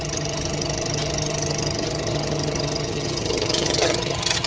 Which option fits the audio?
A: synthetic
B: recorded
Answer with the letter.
A